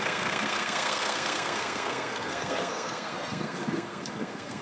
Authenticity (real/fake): fake